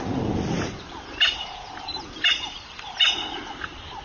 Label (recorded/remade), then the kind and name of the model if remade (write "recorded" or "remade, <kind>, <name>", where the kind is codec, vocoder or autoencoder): remade, vocoder, BigVGAN v2